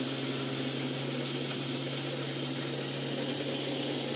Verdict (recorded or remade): recorded